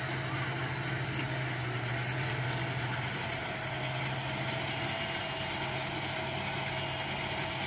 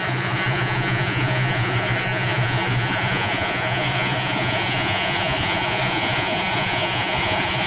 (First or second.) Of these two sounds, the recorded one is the first